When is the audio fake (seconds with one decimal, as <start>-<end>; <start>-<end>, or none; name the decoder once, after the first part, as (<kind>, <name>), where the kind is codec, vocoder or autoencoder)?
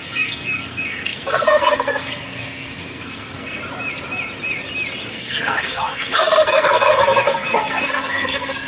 0.0-3.6 (codec, SNAC); 5.1-8.7